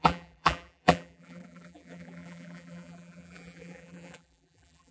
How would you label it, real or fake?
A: fake